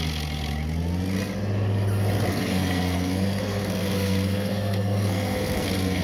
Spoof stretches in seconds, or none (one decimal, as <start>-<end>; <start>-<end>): 2.3-6.0